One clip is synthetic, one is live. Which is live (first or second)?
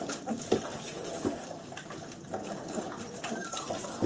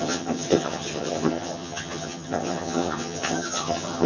first